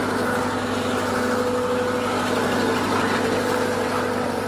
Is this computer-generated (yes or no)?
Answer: no